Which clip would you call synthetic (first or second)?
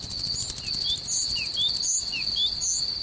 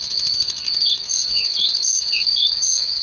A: second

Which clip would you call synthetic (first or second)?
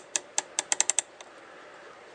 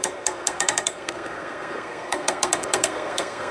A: second